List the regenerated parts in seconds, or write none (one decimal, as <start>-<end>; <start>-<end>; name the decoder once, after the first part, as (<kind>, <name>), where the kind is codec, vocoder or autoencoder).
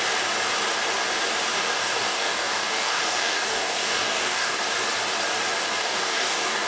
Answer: 1.5-4.6 (codec, DAC); 5.8-6.7